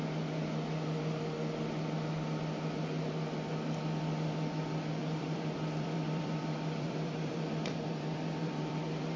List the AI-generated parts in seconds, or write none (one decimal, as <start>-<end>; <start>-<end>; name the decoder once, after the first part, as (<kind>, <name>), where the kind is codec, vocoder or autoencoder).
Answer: 5.0-9.2 (vocoder, BigVGAN v2)